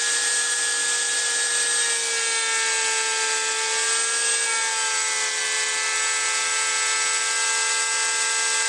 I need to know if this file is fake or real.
real